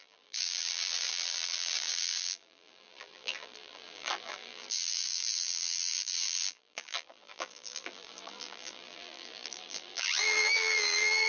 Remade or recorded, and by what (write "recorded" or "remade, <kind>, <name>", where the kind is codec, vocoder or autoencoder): remade, vocoder, BigVGAN v2